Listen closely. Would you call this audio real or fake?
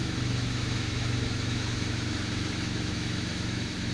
fake